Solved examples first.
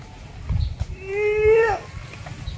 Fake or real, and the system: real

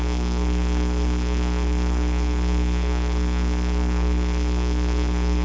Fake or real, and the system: fake, codec, SNAC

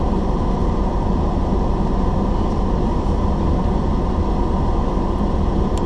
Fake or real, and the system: real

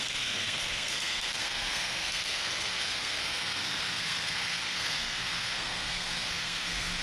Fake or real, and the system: fake, codec, SNAC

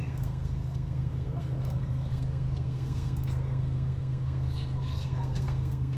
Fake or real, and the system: fake, codec, SNAC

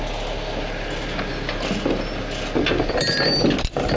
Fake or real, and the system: real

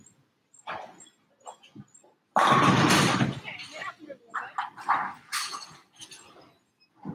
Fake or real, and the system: real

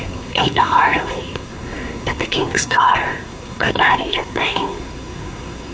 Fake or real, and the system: fake, codec, SNAC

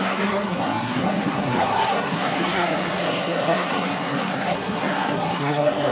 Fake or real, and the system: fake, codec, SNAC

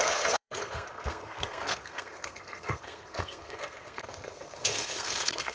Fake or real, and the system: fake, codec, SNAC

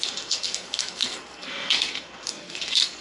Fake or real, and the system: fake, codec, SNAC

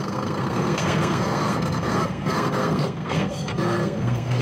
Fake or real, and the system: fake, codec, SNAC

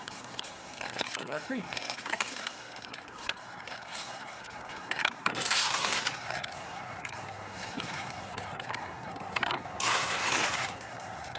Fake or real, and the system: fake, codec, SNAC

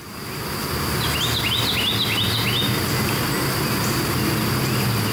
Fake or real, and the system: real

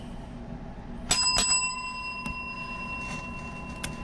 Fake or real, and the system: real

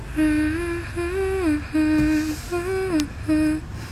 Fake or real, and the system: real